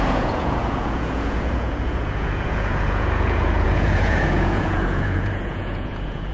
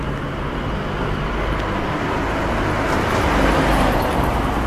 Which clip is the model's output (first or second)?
first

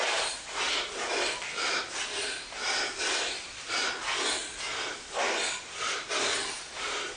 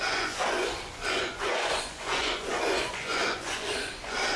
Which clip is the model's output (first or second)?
second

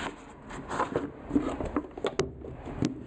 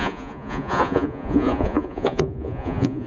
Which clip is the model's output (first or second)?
second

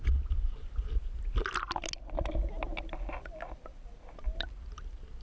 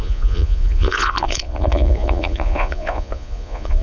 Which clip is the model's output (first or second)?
second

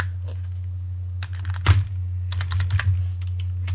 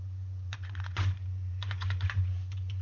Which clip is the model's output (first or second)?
second